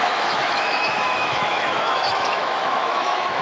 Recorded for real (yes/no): no